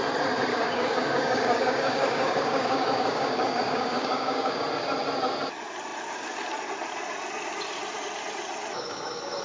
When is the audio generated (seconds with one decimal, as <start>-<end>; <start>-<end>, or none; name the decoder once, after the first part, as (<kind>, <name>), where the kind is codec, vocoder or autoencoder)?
0.5-4.6 (codec, DAC)